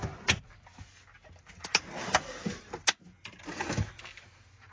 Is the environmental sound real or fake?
real